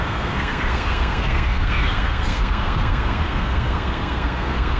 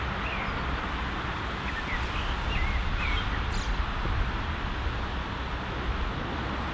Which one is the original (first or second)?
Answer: second